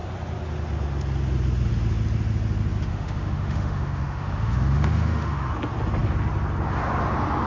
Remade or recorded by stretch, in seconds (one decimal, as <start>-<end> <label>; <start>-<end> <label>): 0.0-2.9 recorded; 2.9-5.5 remade; 5.5-7.5 recorded